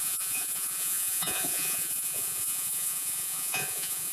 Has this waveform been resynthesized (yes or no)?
yes